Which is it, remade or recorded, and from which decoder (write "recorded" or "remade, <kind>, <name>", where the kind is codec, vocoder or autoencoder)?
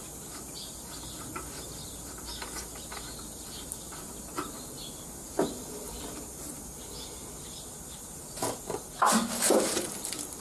recorded